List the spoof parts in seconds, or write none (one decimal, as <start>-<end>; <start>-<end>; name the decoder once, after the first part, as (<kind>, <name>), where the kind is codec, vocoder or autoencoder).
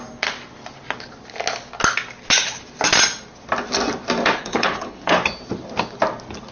4.4-5.2 (codec, HILCodec)